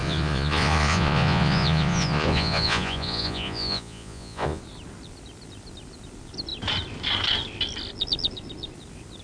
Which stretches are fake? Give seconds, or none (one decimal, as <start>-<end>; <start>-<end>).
0.0-4.6